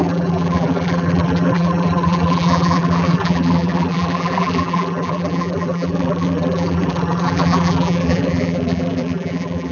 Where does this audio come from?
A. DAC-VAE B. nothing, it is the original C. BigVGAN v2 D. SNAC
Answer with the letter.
C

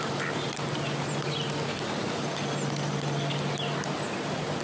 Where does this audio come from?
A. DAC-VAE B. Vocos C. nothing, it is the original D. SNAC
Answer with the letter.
C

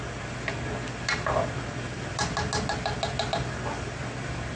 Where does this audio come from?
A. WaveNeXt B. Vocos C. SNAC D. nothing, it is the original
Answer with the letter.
D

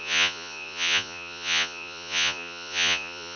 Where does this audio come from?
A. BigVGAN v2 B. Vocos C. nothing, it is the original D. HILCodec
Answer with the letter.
B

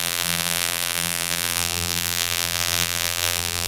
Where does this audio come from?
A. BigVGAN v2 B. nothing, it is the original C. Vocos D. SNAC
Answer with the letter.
A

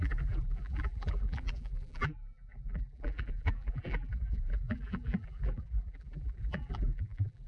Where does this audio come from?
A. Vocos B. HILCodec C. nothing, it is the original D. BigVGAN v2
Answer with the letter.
D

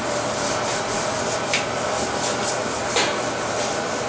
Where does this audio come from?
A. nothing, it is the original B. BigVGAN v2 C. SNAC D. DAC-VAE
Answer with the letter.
A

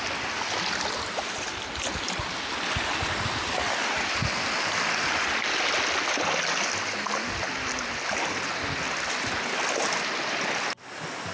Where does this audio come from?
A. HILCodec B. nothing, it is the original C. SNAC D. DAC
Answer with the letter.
B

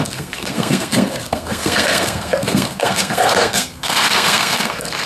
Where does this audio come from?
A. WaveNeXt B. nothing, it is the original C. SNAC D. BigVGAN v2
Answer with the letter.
C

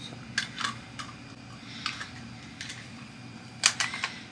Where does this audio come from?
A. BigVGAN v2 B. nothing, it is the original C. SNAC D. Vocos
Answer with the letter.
B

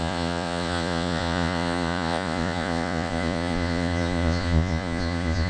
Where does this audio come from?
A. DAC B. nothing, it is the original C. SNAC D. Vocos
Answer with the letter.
D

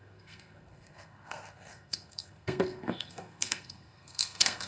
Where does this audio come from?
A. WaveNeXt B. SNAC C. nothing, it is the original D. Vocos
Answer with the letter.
B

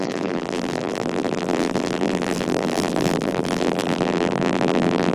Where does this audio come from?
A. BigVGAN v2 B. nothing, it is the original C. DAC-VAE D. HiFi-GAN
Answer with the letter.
A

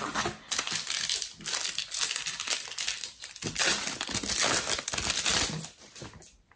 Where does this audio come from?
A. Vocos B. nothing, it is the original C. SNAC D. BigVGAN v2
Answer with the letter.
B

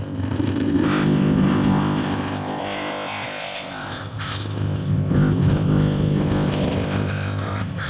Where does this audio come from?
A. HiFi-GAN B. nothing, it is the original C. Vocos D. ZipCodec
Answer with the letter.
D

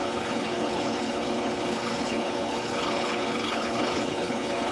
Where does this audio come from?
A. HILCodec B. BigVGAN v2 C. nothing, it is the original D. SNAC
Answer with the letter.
A